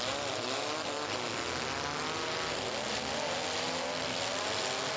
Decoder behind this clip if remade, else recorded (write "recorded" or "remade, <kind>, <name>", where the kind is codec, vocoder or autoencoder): recorded